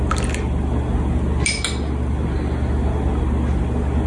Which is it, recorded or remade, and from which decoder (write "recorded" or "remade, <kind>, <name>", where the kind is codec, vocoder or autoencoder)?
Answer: recorded